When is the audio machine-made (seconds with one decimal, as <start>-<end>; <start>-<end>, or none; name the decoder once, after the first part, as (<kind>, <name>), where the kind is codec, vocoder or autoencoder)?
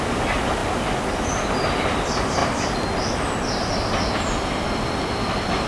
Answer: none